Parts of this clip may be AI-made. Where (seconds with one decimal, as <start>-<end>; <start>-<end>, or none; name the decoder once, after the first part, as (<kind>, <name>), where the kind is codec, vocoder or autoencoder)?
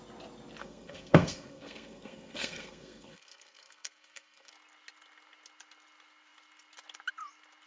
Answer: 0.6-4.5 (codec, SNAC)